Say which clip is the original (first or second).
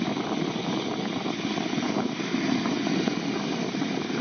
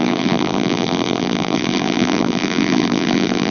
first